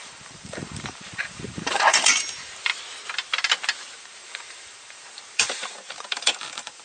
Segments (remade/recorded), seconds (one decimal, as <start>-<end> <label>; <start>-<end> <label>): 0.0-2.7 remade; 2.7-3.8 recorded; 3.8-6.8 remade